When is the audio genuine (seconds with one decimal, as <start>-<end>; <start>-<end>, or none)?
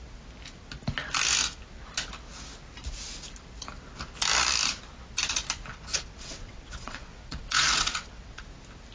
0.0-5.7; 8.4-8.9